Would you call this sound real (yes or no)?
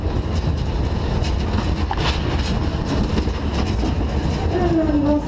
yes